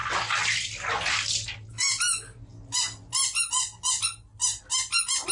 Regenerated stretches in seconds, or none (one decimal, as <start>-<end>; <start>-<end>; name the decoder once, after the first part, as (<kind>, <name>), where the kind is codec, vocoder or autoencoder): none